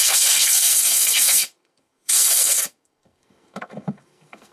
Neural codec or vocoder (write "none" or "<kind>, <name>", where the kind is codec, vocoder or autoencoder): codec, SNAC